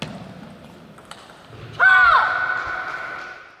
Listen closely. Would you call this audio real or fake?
real